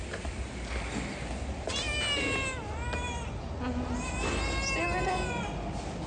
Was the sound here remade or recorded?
recorded